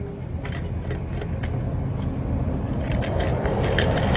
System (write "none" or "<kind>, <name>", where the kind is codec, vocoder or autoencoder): none